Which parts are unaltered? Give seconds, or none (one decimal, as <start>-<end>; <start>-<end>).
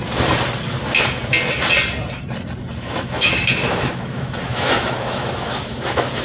0.0-2.8